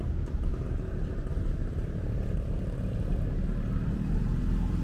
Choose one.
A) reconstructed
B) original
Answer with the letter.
B